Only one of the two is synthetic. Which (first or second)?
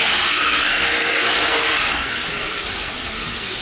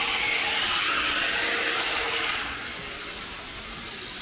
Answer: first